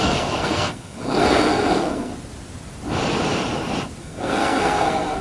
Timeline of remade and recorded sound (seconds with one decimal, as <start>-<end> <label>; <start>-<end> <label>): 0.0-2.1 remade; 2.1-4.0 recorded; 4.0-5.2 remade